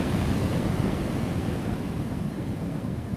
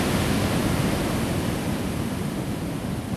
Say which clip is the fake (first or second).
first